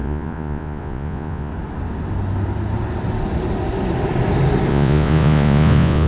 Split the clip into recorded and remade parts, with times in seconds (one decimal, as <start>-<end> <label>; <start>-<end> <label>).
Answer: 0.0-1.5 remade; 1.5-4.7 recorded; 4.7-6.1 remade